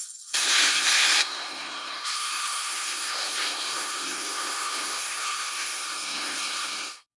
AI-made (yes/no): yes